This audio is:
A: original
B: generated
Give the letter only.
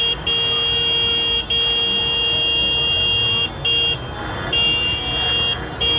A